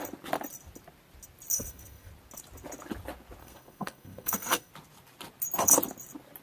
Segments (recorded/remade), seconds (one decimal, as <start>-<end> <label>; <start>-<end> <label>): 0.0-1.5 recorded; 1.5-2.1 remade; 2.1-3.4 recorded; 3.4-4.7 remade; 4.7-6.4 recorded